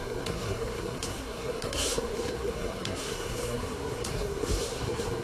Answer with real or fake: fake